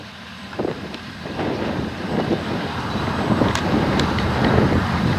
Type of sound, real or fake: fake